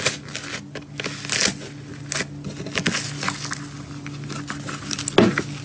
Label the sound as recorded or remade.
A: recorded